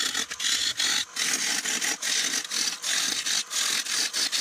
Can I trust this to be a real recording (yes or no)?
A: yes